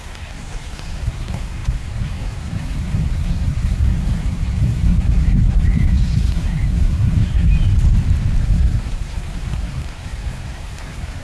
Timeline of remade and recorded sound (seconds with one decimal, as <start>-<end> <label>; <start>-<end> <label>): 0.0-7.5 remade; 7.5-8.4 recorded; 8.4-11.2 remade